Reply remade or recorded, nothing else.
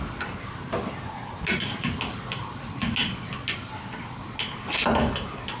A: recorded